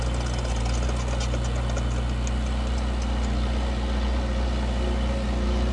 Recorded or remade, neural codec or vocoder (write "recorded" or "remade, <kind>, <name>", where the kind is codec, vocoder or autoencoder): recorded